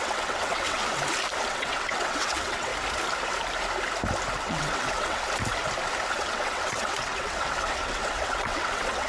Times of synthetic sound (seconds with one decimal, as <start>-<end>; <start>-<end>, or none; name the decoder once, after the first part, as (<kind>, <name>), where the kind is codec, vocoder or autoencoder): 0.0-0.8 (vocoder, WaveNeXt); 1.5-2.7; 4.4-5.2; 6.2-9.1